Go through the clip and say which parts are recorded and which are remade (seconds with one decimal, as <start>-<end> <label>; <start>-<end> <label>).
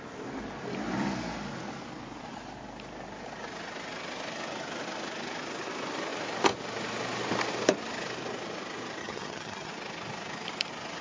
0.0-9.0 recorded; 9.0-9.7 remade; 9.7-11.0 recorded